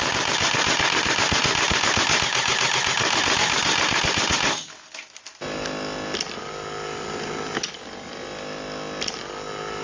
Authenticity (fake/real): real